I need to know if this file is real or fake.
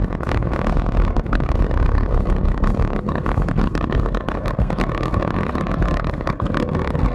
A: fake